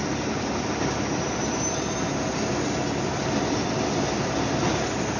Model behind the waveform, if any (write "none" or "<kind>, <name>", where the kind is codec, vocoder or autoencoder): none